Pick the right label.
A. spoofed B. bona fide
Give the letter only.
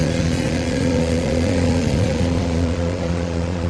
A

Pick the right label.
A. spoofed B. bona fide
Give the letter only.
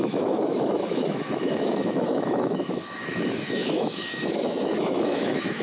A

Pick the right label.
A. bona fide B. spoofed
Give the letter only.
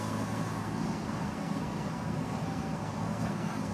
B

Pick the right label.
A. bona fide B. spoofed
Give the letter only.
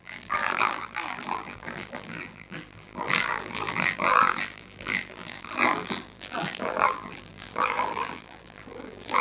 B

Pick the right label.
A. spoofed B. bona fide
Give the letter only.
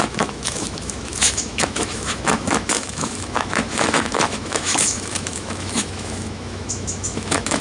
A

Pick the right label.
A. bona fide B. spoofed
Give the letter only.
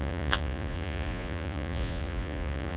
B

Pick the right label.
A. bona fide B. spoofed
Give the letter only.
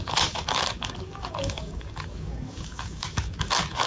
B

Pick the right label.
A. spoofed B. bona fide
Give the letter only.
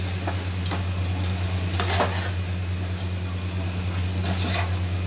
B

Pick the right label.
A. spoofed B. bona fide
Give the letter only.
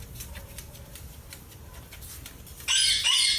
B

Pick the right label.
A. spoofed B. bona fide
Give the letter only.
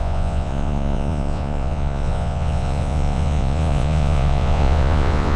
A